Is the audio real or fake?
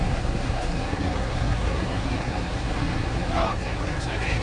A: fake